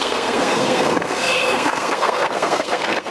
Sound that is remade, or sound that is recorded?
remade